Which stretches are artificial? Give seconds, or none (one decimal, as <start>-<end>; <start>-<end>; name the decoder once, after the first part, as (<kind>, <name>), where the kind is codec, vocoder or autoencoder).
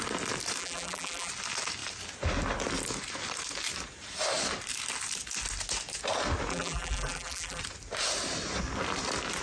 0.6-1.3 (vocoder, BigVGAN v2); 6.5-7.6